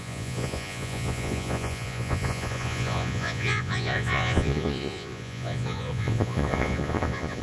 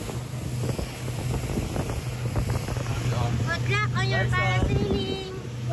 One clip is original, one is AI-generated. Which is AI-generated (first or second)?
first